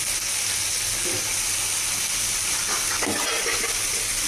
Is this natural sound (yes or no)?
yes